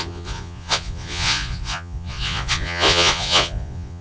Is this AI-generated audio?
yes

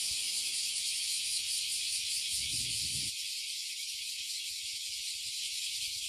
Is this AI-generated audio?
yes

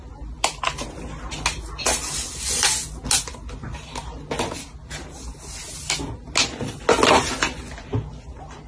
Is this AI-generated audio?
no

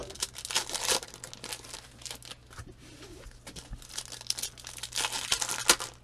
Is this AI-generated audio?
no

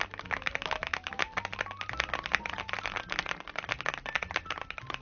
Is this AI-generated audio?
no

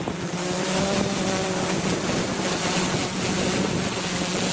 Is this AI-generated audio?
no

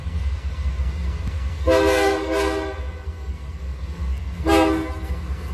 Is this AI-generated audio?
yes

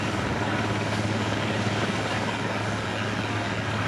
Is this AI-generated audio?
yes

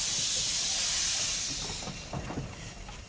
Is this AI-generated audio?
no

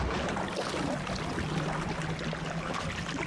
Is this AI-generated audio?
no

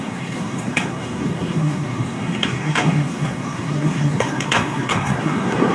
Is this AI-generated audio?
yes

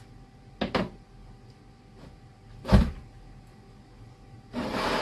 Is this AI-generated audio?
no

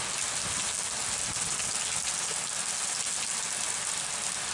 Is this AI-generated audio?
no